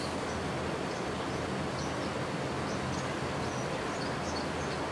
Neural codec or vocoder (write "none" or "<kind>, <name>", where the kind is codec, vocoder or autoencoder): none